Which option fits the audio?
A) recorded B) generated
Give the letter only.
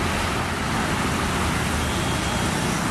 A